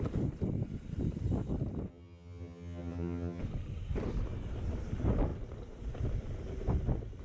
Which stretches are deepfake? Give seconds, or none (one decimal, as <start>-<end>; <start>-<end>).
1.9-3.4